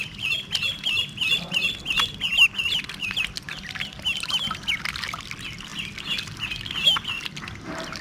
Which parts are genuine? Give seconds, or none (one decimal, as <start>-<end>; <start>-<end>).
0.0-8.0